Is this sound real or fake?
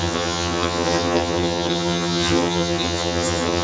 fake